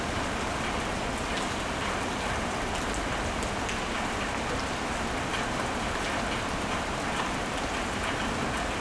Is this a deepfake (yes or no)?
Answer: no